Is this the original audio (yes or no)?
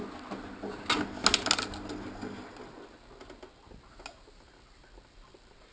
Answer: yes